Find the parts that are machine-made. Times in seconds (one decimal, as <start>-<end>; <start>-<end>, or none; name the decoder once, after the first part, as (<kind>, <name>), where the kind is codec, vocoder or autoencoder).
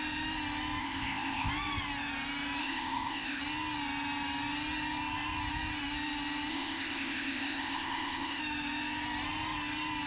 0.8-1.5 (codec, ZipCodec); 2.6-3.4; 6.5-8.4